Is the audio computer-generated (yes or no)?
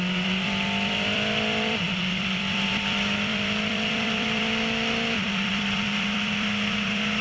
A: yes